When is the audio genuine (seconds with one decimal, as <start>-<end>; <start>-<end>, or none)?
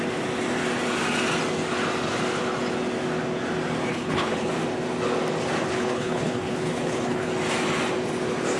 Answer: 0.0-3.9; 4.5-5.7; 7.3-8.6